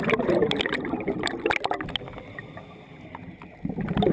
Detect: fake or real real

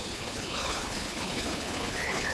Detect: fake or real fake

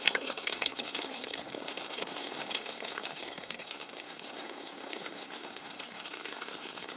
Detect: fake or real fake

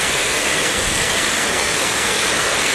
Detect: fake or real fake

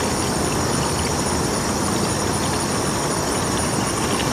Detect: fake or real real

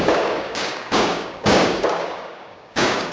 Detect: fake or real fake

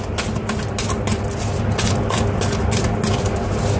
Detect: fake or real real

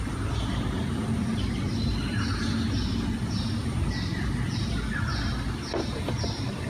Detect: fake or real real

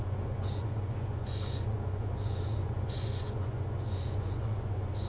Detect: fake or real fake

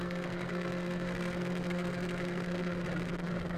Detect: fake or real fake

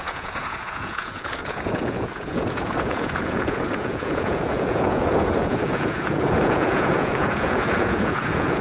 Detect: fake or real fake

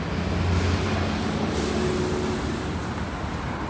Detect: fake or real real